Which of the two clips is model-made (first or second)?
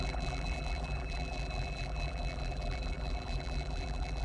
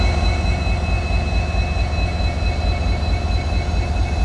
first